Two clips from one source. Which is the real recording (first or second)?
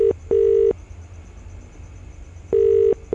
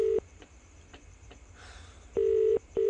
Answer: first